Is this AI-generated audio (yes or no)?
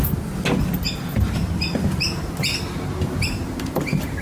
no